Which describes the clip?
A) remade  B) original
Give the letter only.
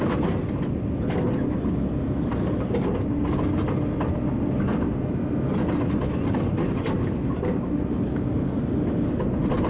B